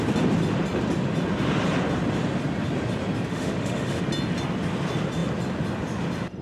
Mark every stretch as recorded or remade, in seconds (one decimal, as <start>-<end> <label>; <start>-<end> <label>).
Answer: 0.0-3.3 recorded; 3.3-4.0 remade; 4.0-6.4 recorded

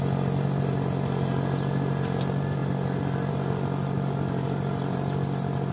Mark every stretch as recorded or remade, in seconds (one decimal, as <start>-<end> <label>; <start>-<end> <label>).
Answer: 0.0-5.7 recorded

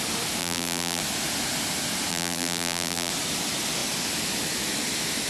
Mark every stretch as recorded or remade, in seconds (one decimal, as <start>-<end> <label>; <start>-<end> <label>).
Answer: 0.0-0.4 recorded; 0.4-1.0 remade; 1.0-2.1 recorded; 2.1-3.1 remade; 3.1-5.3 recorded

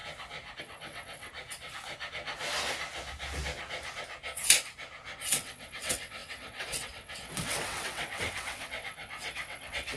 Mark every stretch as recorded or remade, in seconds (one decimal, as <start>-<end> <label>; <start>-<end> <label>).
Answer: 0.0-0.6 recorded; 0.6-1.3 remade; 1.3-5.3 recorded; 5.3-10.0 remade

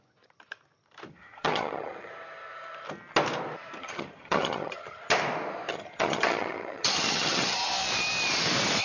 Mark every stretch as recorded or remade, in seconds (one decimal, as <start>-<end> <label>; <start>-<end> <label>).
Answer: 0.0-1.1 recorded; 1.1-2.1 remade; 2.1-3.8 recorded; 3.8-5.0 remade; 5.0-5.7 recorded; 5.7-7.7 remade; 7.7-8.8 recorded

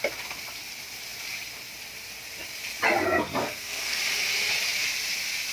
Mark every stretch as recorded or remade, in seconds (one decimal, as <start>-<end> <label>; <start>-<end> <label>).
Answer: 0.0-3.4 recorded; 3.4-4.0 remade; 4.0-5.5 recorded